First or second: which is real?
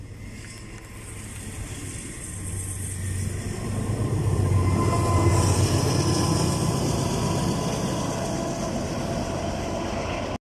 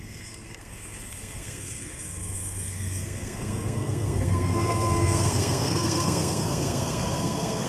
first